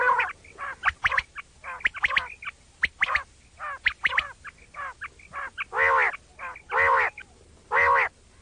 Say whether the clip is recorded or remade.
recorded